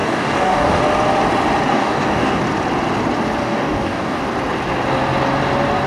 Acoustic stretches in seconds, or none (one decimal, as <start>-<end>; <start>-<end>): 0.8-1.7; 2.4-3.4; 4.2-5.9